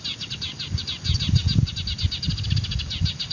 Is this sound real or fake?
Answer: real